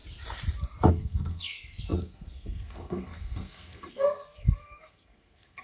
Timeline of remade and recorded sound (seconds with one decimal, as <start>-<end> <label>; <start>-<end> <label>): 0.0-0.9 recorded; 0.9-5.6 remade